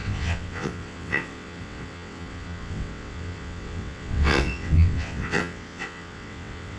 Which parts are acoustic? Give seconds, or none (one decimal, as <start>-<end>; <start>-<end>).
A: none